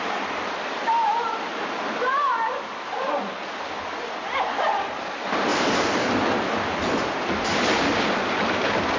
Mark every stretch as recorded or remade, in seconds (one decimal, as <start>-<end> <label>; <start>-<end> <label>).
0.0-9.0 recorded